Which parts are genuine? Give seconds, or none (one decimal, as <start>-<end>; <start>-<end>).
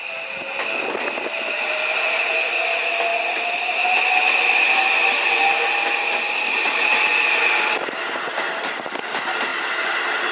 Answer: 0.0-10.3